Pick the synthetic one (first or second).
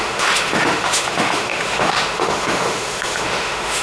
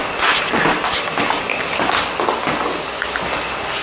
first